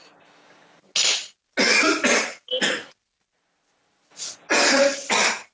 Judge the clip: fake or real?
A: real